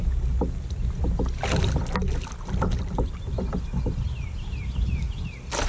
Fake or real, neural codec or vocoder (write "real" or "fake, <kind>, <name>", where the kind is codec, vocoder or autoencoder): real